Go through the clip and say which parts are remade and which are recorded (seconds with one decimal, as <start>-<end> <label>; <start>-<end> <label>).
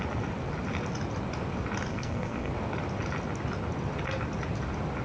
0.0-1.9 recorded; 1.9-2.5 remade; 2.5-5.0 recorded